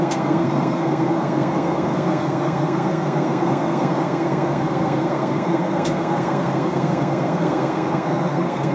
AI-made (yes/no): yes